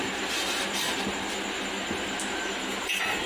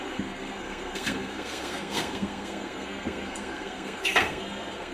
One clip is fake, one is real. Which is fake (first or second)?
second